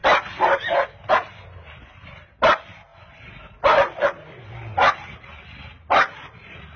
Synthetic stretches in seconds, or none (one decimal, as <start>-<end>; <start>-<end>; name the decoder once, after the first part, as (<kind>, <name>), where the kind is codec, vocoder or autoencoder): none